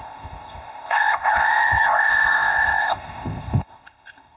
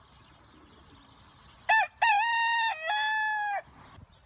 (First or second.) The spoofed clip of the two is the first